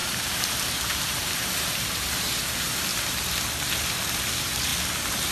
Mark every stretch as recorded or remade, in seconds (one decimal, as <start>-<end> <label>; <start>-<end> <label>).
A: 0.0-2.9 remade; 2.9-4.3 recorded; 4.3-4.7 remade; 4.7-5.3 recorded